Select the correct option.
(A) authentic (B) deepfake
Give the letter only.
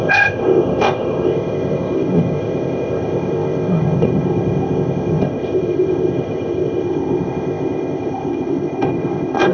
B